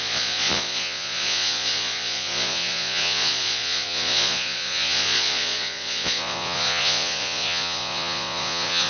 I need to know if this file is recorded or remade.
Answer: remade